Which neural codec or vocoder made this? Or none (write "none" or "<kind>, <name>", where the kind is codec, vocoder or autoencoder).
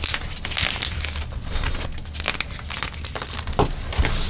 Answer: none